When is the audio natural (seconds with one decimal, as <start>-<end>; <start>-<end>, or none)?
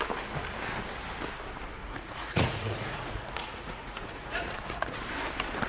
0.0-1.8; 5.0-5.7